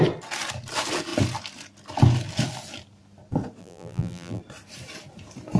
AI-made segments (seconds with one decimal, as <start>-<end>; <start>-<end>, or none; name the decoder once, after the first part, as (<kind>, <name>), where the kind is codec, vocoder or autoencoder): 3.6-4.4 (vocoder, BigVGAN v2)